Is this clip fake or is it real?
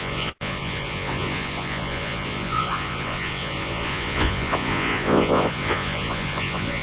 fake